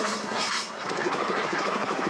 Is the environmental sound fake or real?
fake